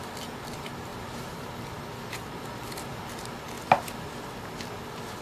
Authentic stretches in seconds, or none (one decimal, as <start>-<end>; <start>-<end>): 0.0-0.9; 1.5-5.2